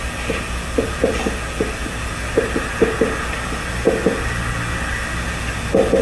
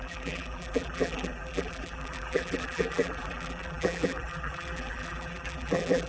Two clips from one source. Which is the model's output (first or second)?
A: second